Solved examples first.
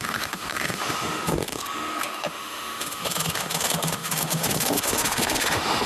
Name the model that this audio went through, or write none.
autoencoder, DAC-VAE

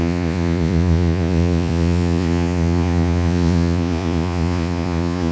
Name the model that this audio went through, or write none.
vocoder, Vocos